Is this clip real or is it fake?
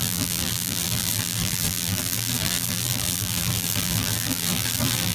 fake